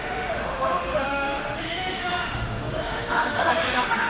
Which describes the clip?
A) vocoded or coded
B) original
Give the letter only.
A